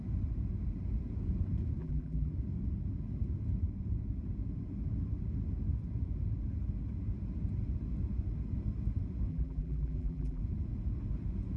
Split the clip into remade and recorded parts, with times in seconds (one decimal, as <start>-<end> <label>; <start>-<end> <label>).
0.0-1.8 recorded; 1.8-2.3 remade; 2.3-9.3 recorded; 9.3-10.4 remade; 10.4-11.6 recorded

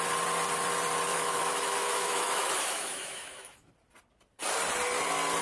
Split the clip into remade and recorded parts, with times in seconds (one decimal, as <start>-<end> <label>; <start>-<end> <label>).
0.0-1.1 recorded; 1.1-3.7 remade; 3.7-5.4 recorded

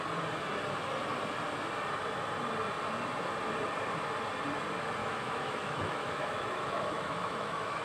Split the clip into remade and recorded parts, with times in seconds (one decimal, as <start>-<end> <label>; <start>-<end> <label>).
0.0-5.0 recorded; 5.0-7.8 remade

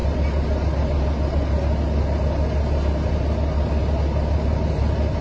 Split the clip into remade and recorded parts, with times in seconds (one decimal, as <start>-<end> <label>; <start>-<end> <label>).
0.0-5.2 recorded